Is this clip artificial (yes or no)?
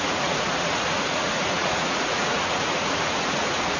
yes